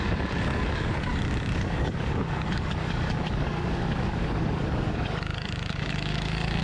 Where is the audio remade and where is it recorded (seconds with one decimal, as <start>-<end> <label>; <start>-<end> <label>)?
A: 0.0-6.6 remade